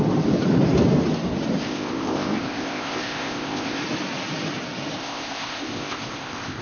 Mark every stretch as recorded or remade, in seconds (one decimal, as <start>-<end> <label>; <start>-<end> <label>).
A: 0.0-1.6 recorded; 1.6-3.8 remade; 3.8-5.0 recorded; 5.0-6.6 remade